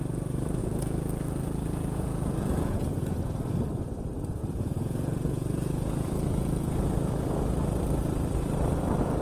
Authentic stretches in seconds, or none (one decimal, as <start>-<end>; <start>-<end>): 0.0-0.6; 3.2-4.4; 7.4-9.2